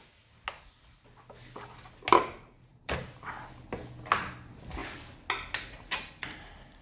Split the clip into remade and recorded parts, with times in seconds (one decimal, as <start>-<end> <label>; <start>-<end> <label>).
0.0-2.7 recorded; 2.7-3.3 remade; 3.3-6.8 recorded